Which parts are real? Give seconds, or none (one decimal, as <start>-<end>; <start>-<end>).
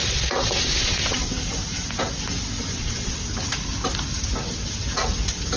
1.3-2.7; 3.2-5.6